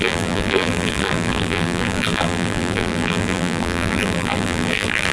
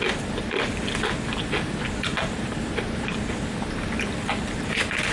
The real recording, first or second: second